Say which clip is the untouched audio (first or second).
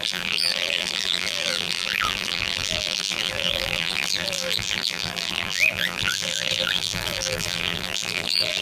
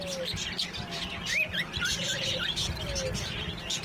second